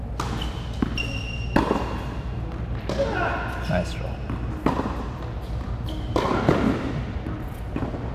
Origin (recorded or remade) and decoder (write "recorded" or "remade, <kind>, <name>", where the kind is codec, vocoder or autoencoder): recorded